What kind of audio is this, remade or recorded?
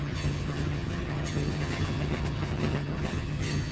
remade